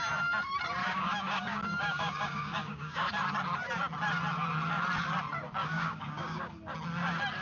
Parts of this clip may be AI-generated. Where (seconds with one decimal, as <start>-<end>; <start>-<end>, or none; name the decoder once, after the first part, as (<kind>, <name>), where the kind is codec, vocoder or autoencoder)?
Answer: 0.8-3.1 (codec, DAC); 5.6-6.5